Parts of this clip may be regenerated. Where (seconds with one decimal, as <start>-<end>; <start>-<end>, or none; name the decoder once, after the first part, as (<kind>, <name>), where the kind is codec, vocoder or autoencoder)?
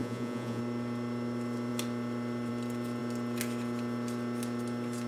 0.0-0.6 (vocoder, Vocos)